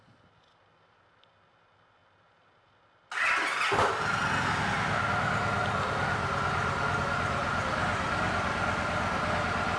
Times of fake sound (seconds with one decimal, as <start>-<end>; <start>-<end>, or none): none